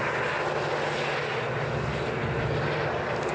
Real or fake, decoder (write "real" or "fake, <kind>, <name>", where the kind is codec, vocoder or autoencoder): real